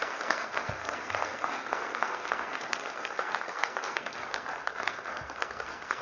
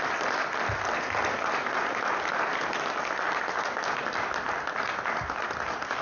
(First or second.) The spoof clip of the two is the first